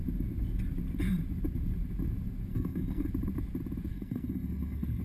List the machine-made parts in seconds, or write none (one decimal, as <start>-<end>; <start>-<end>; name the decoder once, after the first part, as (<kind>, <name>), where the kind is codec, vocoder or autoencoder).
2.5-3.1 (codec, SNAC); 3.9-5.0